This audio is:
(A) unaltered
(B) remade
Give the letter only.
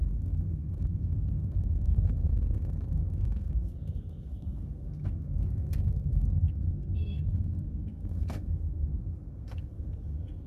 B